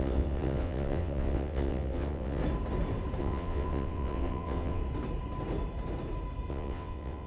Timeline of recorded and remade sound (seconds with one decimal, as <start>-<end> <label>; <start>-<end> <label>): 0.0-2.4 remade; 2.4-3.2 recorded; 3.2-4.8 remade; 4.8-6.5 recorded; 6.5-7.3 remade